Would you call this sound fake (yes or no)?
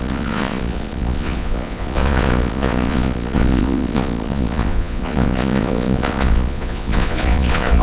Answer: yes